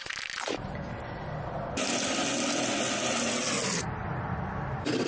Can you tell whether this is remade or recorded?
recorded